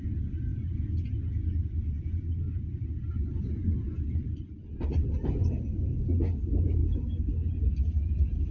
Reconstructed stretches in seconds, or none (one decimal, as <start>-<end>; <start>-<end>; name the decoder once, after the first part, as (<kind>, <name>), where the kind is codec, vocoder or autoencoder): none